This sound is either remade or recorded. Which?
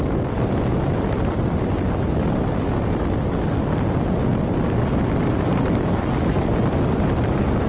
recorded